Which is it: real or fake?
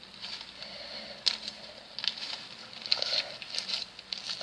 real